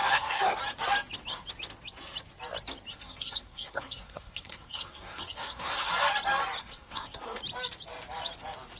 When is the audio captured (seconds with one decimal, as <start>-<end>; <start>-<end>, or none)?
0.6-2.9; 5.9-6.6; 7.4-8.8

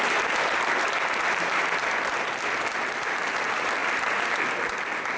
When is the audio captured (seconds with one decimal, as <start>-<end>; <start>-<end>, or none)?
0.0-5.2

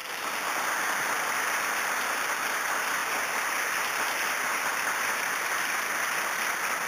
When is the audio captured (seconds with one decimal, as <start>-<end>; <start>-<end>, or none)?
0.0-3.0; 3.5-6.9

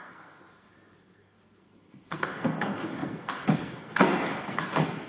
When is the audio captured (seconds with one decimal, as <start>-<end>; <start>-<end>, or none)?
none

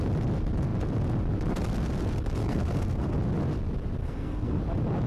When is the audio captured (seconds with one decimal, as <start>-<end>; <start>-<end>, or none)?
0.0-2.4; 3.2-4.0; 4.6-5.1

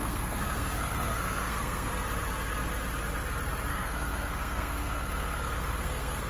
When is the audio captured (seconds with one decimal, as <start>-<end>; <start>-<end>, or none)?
1.9-3.7

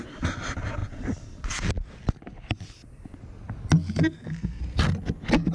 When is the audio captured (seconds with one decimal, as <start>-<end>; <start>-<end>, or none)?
0.0-4.0; 4.6-5.5